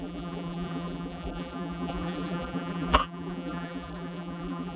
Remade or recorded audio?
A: remade